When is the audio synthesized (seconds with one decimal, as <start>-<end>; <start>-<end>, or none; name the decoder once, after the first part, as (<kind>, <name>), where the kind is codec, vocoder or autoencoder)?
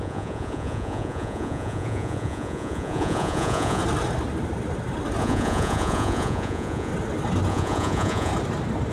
0.0-3.8 (vocoder, Vocos); 5.2-6.9; 7.5-8.3